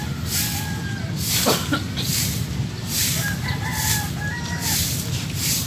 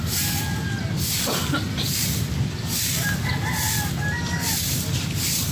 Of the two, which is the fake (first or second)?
first